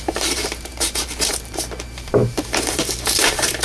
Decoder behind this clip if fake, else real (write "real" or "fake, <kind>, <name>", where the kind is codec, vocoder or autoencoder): fake, vocoder, BigVGAN v2